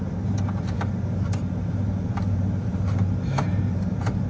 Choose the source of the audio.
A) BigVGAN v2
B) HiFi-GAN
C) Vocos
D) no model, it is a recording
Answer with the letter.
A